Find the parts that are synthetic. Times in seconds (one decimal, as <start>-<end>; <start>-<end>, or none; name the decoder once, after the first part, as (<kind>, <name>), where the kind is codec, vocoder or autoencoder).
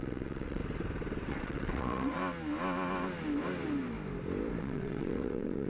0.0-0.6 (vocoder, WaveNeXt); 1.3-2.2; 4.6-5.7